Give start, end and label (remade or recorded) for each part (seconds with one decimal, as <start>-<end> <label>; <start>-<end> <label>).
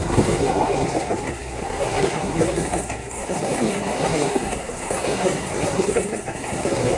0.0-7.0 remade